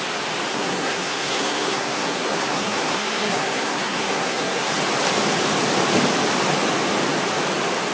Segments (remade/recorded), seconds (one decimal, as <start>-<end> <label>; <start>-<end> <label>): 0.0-0.5 recorded; 0.5-4.7 remade; 4.7-7.9 recorded